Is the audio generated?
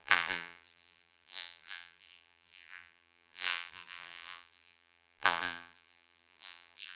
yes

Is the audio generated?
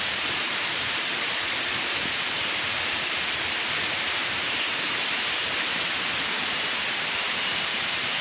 yes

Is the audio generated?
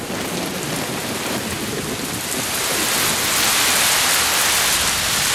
no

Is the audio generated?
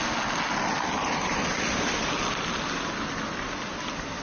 no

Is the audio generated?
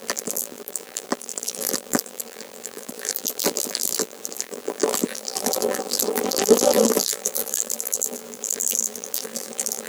yes